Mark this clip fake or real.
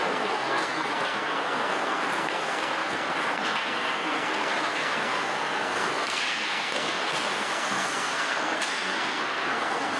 fake